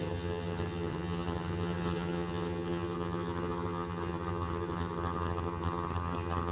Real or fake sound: fake